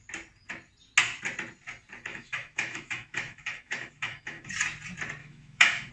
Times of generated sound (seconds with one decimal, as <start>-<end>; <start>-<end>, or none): 2.1-4.5; 5.2-5.9